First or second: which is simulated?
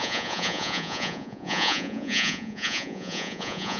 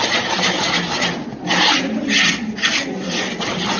first